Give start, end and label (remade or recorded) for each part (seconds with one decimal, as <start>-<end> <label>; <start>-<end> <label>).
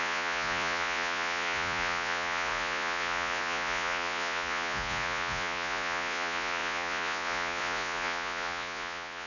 0.0-9.3 remade